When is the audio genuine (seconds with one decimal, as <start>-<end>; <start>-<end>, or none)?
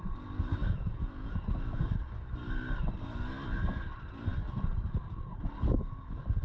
0.0-0.6; 1.4-6.4